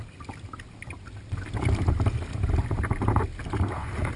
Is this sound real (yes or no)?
yes